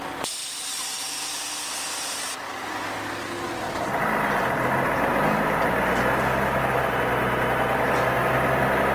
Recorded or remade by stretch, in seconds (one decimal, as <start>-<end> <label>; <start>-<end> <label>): 0.0-8.9 recorded